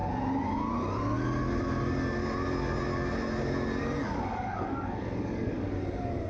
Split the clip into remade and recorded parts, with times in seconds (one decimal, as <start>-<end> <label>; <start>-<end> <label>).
0.0-3.8 recorded; 3.8-6.3 remade